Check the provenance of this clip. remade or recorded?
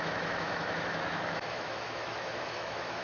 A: remade